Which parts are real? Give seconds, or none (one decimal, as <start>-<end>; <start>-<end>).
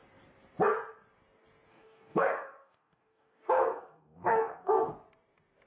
0.0-1.7; 4.9-5.7